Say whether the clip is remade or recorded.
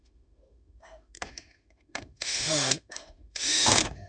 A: remade